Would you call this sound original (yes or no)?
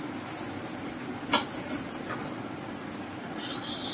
yes